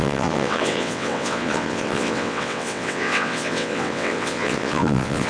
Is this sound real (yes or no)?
no